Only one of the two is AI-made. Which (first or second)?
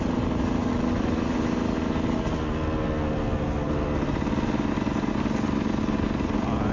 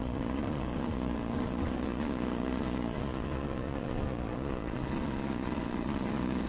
second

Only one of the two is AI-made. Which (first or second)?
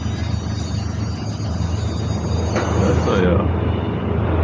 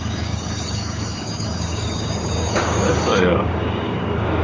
second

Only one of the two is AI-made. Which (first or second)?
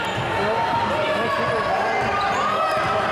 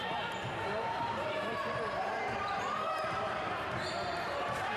second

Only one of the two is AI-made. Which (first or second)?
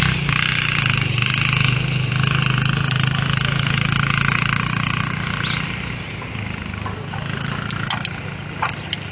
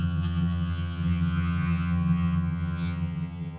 second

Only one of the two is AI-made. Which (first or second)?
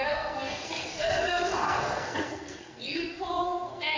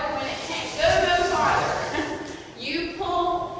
first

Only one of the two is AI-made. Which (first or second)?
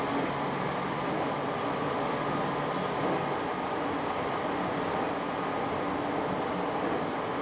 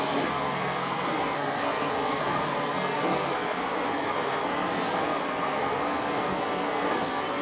second